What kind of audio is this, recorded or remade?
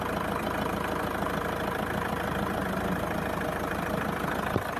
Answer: remade